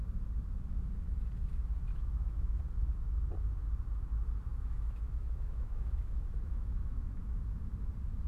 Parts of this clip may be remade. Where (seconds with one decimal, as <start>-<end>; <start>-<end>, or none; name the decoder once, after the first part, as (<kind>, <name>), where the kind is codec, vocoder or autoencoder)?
1.9-2.6 (autoencoder, DAC-VAE); 4.5-7.7